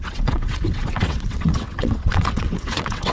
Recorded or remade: remade